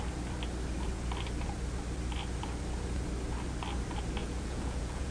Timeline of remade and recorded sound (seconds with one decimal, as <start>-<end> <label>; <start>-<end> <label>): 0.0-4.2 recorded; 4.2-5.1 remade